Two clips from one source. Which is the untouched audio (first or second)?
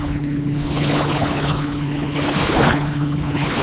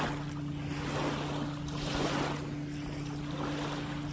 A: second